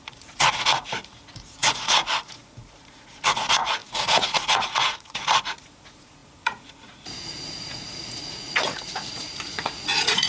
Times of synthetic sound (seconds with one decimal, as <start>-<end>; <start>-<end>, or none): 0.0-10.3